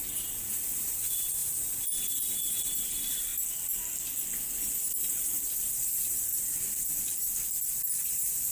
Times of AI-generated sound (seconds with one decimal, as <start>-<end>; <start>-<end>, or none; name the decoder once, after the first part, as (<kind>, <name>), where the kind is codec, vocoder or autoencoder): 0.0-3.3 (vocoder, BigVGAN v2); 4.9-6.3; 8.1-8.5